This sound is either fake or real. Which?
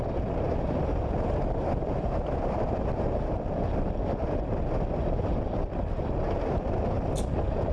real